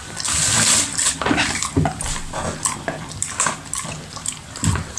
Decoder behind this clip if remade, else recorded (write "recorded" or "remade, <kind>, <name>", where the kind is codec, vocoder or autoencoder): recorded